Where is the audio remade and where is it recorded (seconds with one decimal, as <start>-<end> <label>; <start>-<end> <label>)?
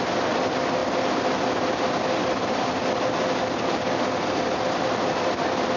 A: 0.0-5.8 recorded